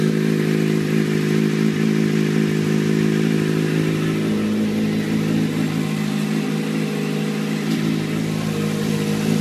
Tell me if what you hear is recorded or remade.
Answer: recorded